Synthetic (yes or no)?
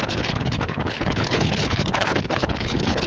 yes